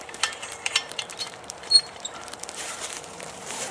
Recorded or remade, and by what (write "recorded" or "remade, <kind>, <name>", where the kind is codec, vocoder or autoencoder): remade, vocoder, BigVGAN v2